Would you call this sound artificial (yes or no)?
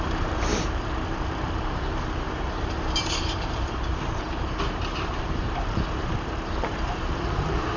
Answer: yes